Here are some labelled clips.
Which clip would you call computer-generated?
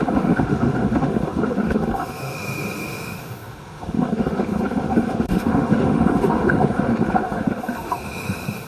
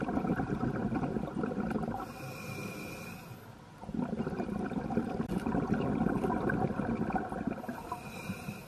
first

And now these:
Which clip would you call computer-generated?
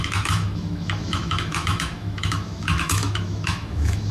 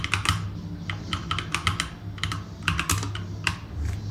first